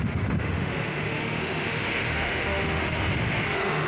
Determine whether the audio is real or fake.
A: fake